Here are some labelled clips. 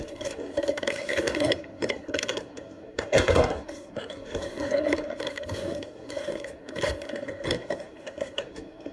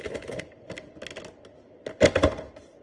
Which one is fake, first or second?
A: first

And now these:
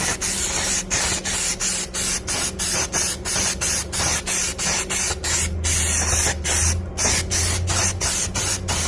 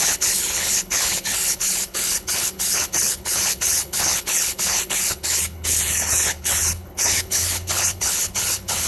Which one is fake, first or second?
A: second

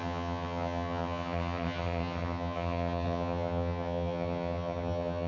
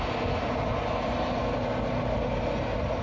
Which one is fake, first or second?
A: first